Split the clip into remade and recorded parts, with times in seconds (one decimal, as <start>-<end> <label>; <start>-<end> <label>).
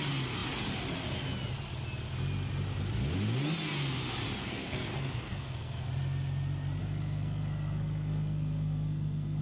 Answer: 0.0-4.4 recorded; 4.4-5.9 remade; 5.9-6.8 recorded; 6.8-9.4 remade